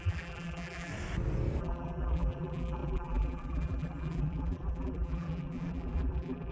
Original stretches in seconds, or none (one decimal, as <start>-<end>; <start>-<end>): 0.9-1.6